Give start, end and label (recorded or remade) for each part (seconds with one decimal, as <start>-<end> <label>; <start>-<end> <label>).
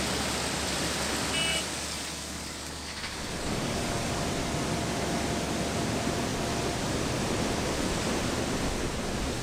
0.0-1.5 recorded; 1.5-4.1 remade; 4.1-9.4 recorded